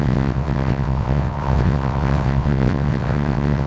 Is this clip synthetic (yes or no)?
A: yes